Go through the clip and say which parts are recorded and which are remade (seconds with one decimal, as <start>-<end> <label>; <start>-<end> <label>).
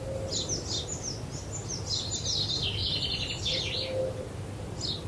0.0-5.1 recorded